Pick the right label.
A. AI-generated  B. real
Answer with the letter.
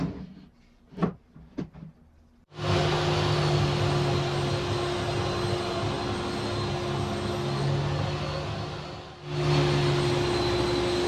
B